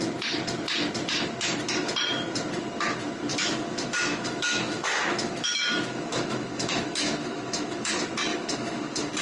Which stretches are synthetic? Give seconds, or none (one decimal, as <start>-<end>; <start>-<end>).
3.3-7.9; 8.3-9.2